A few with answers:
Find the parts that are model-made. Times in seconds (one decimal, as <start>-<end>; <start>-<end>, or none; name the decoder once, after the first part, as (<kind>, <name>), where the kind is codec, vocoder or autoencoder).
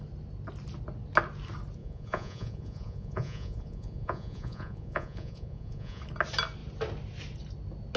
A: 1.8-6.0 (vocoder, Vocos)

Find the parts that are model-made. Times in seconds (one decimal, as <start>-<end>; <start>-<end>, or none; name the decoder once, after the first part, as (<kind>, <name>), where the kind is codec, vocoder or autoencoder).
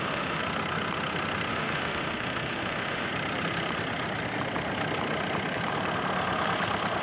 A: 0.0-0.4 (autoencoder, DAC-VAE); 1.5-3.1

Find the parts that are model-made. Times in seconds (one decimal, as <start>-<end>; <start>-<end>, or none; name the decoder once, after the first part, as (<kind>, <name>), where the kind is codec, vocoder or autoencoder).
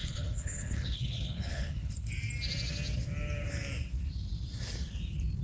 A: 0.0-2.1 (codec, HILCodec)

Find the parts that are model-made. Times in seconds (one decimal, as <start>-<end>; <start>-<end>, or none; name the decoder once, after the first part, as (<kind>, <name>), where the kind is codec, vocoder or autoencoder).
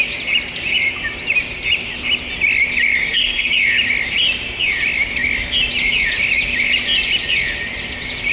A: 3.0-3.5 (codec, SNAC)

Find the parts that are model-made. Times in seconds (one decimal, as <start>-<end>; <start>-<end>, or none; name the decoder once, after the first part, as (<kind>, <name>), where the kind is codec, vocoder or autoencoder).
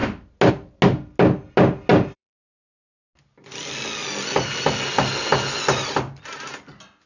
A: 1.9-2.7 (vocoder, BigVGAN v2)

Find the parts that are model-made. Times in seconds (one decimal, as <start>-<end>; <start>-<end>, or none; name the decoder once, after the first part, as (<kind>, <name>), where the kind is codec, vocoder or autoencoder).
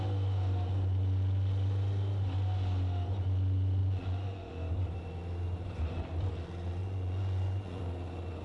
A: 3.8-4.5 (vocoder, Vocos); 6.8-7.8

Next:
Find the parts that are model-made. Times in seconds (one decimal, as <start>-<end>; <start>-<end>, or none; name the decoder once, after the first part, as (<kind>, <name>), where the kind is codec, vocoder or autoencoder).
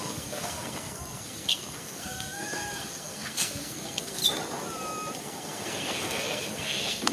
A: 0.0-4.2 (codec, SNAC); 5.2-7.1